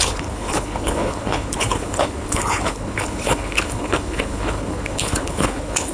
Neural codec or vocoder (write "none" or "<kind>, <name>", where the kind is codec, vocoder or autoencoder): codec, HILCodec